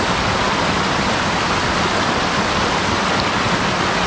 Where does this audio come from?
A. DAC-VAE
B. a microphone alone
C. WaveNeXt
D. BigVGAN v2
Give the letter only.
B